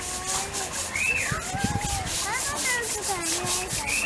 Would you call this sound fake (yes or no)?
no